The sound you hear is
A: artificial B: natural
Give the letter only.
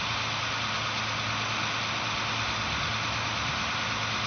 B